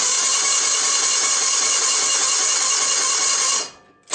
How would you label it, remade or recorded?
recorded